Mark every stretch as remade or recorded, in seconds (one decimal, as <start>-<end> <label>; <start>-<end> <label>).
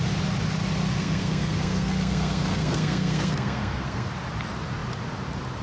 0.0-1.0 recorded; 1.0-4.1 remade; 4.1-5.6 recorded